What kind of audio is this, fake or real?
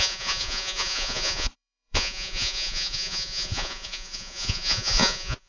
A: fake